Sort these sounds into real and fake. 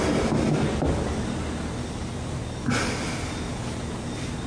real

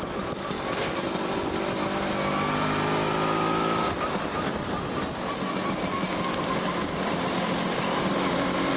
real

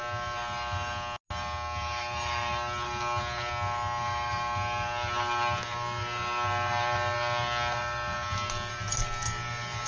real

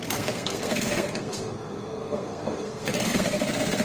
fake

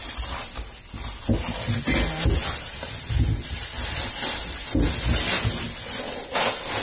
real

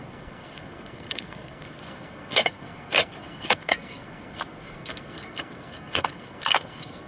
fake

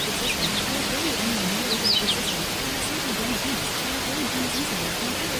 real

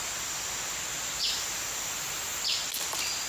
real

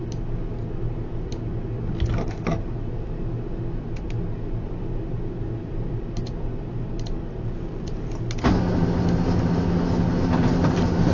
real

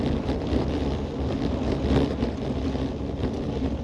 real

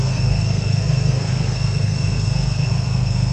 fake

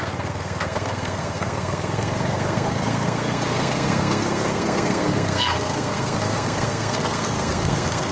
fake